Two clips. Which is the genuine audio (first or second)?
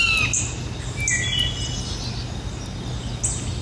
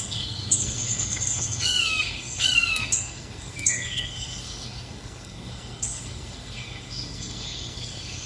first